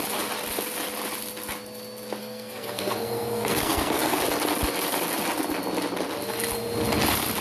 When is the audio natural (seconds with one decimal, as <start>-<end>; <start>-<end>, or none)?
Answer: 0.0-2.2; 4.2-7.4